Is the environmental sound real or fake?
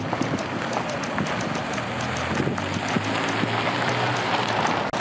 real